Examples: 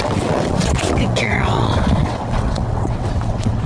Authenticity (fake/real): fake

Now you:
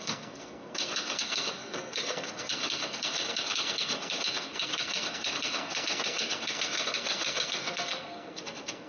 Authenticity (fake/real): fake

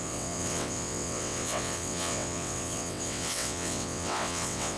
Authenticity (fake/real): fake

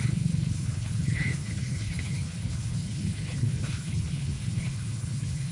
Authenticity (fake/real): fake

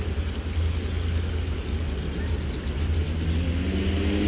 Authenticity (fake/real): real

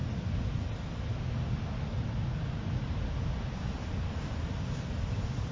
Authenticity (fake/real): real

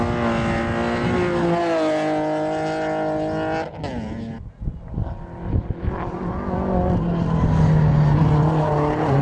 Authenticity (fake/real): real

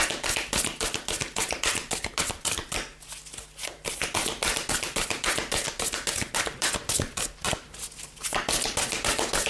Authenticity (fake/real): real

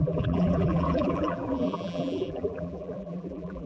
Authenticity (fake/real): fake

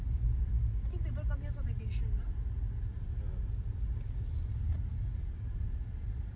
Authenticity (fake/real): real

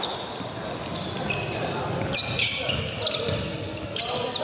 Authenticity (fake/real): real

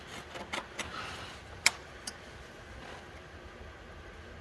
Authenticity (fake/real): real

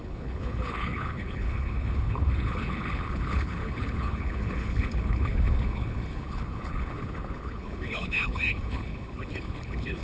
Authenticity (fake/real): fake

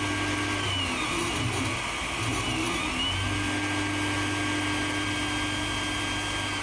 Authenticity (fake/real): real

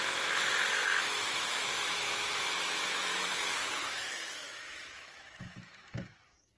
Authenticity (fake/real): fake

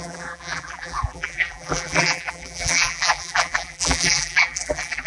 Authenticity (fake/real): fake